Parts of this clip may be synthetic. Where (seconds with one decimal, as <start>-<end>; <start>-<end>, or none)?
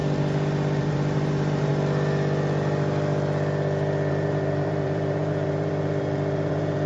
0.8-1.7; 4.1-6.9